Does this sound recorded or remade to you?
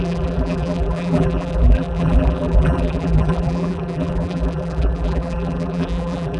remade